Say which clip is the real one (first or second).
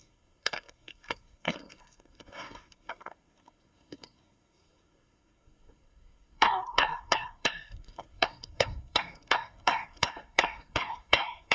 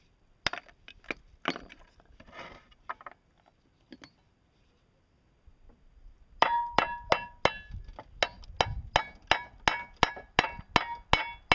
second